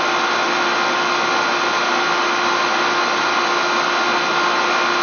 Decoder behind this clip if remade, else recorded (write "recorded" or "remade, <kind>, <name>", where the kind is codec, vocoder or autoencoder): recorded